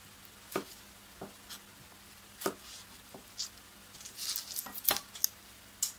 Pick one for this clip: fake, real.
real